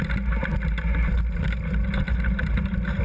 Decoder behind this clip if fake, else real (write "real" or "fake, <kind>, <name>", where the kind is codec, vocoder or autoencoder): real